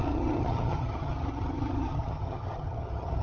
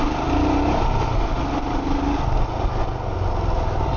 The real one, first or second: second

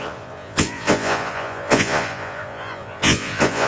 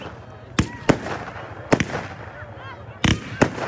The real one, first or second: second